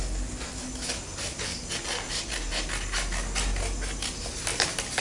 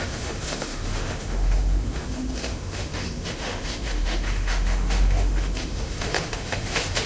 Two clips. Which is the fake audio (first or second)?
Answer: second